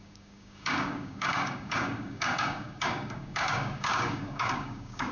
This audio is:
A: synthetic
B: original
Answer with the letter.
A